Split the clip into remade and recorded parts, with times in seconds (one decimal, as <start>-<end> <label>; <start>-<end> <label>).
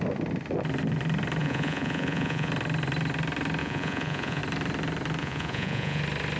0.0-1.4 recorded; 1.4-2.5 remade; 2.5-3.6 recorded; 3.6-4.4 remade; 4.4-5.2 recorded; 5.2-6.0 remade; 6.0-6.4 recorded